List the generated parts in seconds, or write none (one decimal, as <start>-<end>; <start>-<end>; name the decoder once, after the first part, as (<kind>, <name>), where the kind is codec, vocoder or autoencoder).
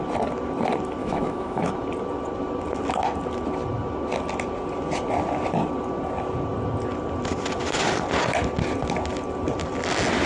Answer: 1.0-1.7 (autoencoder, DAC-VAE)